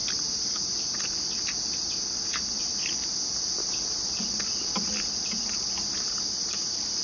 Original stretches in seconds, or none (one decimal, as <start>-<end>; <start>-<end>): 0.9-7.0